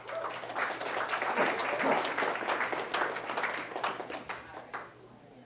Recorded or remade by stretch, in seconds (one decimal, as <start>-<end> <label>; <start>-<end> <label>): 0.0-5.5 recorded